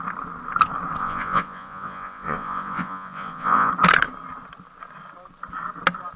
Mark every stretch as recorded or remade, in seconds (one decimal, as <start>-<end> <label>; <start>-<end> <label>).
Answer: 0.0-1.0 recorded; 1.0-3.7 remade; 3.7-6.2 recorded